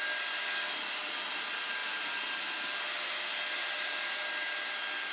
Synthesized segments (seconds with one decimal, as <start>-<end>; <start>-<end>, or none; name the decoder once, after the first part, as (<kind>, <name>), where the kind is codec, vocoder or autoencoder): none